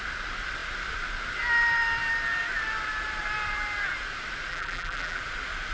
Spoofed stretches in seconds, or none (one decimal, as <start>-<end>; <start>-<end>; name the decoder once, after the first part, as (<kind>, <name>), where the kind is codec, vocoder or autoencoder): 4.5-5.2 (vocoder, BigVGAN v2)

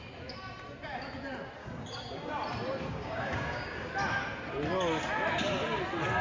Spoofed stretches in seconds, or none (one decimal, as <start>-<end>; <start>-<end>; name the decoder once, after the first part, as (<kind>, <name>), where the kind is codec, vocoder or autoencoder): 1.6-2.3 (codec, DAC); 2.9-3.9

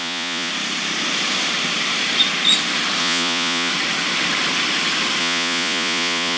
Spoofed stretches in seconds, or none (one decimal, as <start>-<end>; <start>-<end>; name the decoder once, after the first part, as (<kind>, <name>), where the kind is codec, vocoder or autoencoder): 0.0-0.5 (vocoder, Vocos); 3.0-3.7; 5.2-6.4